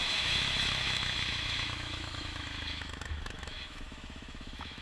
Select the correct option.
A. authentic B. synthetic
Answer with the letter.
B